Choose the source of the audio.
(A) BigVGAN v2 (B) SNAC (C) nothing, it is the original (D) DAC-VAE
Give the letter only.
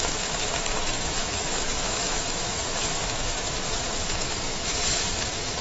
D